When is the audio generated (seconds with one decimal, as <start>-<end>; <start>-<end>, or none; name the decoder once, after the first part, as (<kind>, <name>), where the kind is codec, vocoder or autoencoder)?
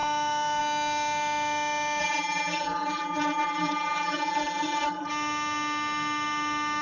2.0-5.1 (vocoder, BigVGAN v2)